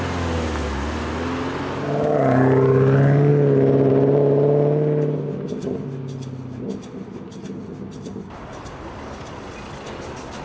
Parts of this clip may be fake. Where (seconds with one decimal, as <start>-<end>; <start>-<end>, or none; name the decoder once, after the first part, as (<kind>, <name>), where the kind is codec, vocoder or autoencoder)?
none